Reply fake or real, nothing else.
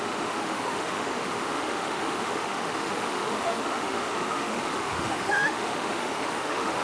fake